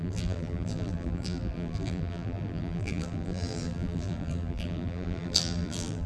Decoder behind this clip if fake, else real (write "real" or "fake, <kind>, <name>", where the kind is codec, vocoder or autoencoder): fake, vocoder, BigVGAN v2